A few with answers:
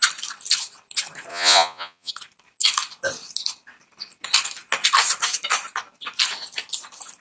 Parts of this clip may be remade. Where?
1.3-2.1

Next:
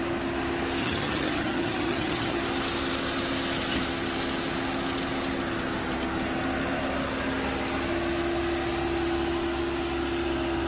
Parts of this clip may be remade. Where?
0.8-2.4

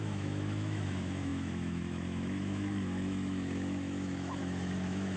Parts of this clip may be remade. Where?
0.0-5.2

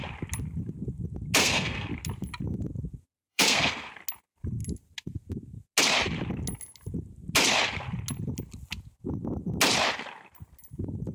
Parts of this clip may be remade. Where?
1.4-1.9; 3.3-3.9